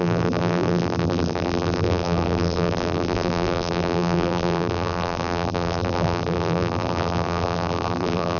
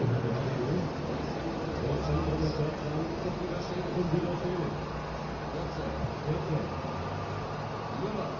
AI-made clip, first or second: first